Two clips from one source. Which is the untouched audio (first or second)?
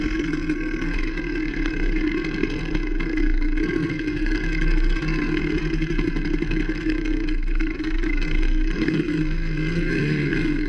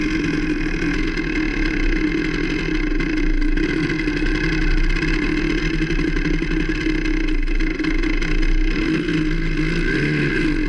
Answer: second